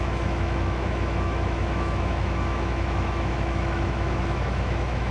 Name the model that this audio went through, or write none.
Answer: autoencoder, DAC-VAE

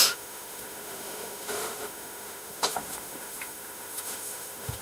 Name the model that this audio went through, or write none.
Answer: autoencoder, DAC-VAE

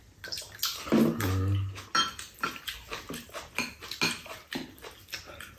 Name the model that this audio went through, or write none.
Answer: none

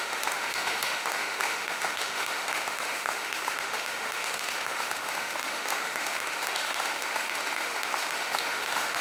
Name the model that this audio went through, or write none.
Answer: autoencoder, DAC-VAE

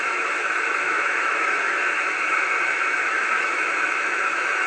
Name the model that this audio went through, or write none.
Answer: autoencoder, DAC-VAE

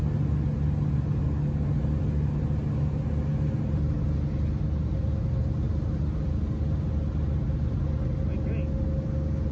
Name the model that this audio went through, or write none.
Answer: none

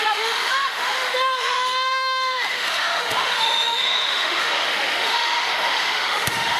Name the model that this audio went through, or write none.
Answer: autoencoder, DAC-VAE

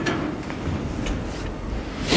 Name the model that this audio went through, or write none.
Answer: none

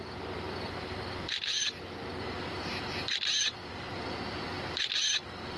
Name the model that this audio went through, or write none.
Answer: none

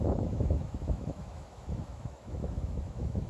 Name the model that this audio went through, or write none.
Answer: autoencoder, DAC-VAE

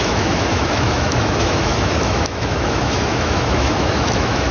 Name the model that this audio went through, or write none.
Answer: autoencoder, DAC-VAE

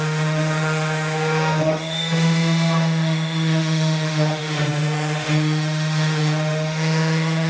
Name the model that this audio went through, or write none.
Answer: autoencoder, DAC-VAE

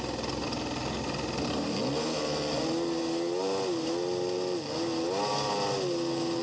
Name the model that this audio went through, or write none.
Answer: none